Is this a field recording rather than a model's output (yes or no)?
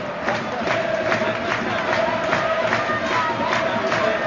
yes